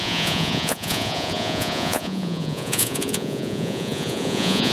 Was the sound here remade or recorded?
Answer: remade